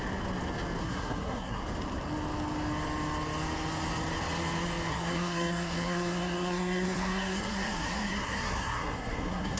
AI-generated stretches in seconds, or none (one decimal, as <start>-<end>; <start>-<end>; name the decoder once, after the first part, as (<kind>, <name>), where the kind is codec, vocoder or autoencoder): 0.8-1.6 (codec, SNAC); 4.9-9.6